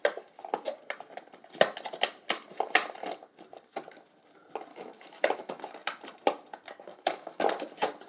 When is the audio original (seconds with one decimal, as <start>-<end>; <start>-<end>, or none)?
0.0-4.7; 5.6-6.9; 7.4-8.1